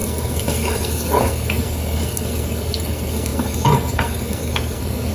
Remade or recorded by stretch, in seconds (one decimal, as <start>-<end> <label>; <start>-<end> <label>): 0.0-5.1 remade